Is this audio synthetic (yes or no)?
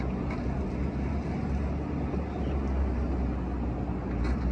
no